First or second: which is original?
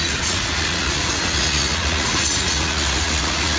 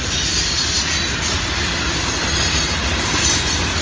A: second